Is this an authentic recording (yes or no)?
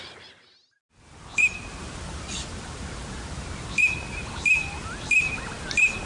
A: yes